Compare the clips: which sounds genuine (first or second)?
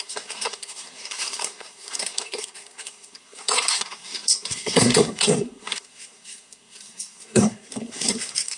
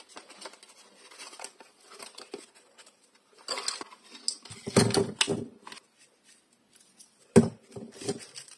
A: second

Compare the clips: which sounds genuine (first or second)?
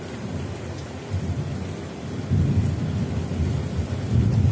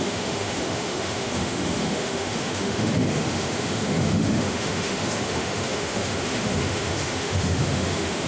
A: first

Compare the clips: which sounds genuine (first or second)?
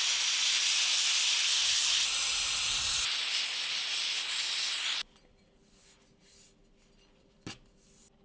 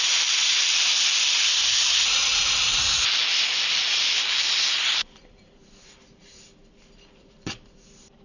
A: first